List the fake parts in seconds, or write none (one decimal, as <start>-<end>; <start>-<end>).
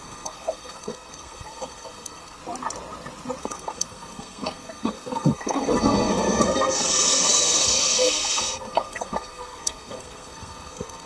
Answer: 0.0-2.4; 3.4-11.1